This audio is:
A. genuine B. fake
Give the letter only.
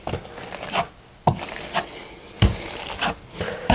B